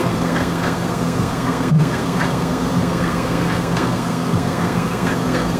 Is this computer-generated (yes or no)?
yes